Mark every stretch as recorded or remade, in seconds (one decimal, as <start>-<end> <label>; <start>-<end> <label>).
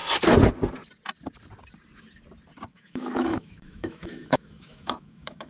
0.0-2.7 recorded; 2.7-5.5 remade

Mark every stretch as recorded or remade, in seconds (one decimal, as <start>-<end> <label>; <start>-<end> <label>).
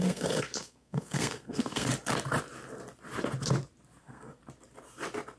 0.0-1.9 remade; 1.9-4.0 recorded; 4.0-4.4 remade; 4.4-5.4 recorded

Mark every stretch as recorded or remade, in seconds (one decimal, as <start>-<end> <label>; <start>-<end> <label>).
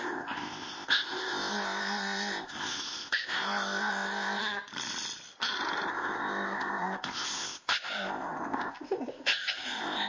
0.0-4.4 remade; 4.4-5.9 recorded; 5.9-10.1 remade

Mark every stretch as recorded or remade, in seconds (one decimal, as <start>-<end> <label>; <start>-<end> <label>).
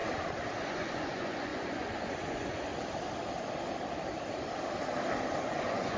0.0-0.6 recorded; 0.6-2.7 remade; 2.7-5.4 recorded; 5.4-6.0 remade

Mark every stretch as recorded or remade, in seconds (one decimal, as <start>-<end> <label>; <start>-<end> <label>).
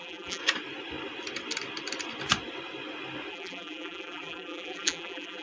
0.0-0.4 remade; 0.4-3.3 recorded; 3.3-5.4 remade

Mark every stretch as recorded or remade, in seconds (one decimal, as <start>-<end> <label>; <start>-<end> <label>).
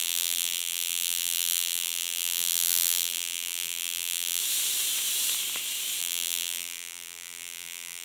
0.0-4.4 remade; 4.4-6.0 recorded; 6.0-8.0 remade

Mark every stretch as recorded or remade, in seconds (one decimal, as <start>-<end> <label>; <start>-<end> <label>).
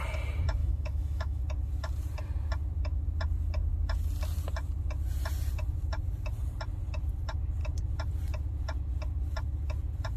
0.0-0.6 recorded; 0.6-1.4 remade; 1.4-10.2 recorded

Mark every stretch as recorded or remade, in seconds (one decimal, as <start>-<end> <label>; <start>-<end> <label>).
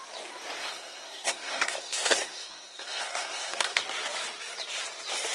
0.0-0.6 recorded; 0.6-3.8 remade; 3.8-5.3 recorded